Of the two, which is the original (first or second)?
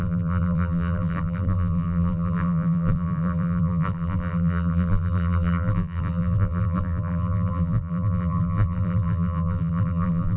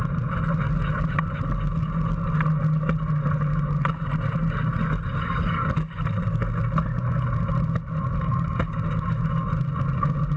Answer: second